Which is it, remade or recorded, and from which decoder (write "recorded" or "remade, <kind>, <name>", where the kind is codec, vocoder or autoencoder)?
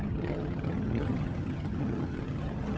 remade, vocoder, HiFi-GAN